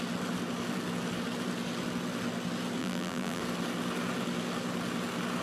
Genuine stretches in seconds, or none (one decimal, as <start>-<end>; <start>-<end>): 0.0-2.8; 3.4-5.4